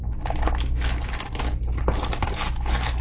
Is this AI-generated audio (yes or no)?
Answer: no